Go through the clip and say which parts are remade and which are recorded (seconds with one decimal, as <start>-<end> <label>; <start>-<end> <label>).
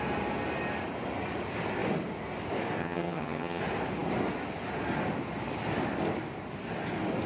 0.0-2.8 recorded; 2.8-3.6 remade; 3.6-7.3 recorded